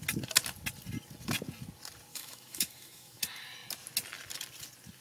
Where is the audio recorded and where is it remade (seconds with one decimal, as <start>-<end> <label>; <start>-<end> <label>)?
0.0-2.1 recorded; 2.1-3.2 remade; 3.2-5.0 recorded